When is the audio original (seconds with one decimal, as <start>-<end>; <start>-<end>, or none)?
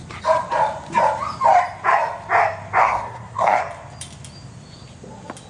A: 0.0-2.8; 3.6-5.5